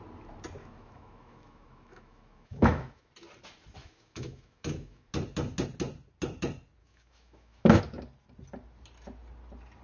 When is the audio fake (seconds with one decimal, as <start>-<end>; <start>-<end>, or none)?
0.6-3.1; 3.8-5.1; 6.8-7.8